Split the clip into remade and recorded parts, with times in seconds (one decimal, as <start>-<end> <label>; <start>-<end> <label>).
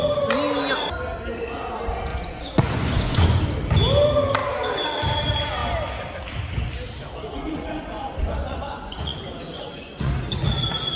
0.0-2.1 recorded; 2.1-3.4 remade; 3.4-7.5 recorded; 7.5-10.1 remade; 10.1-11.0 recorded